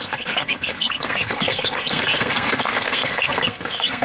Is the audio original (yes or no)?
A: no